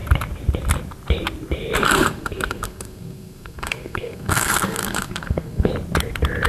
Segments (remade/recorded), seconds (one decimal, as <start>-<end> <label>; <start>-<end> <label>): 0.0-1.8 recorded; 1.8-5.7 remade; 5.7-6.5 recorded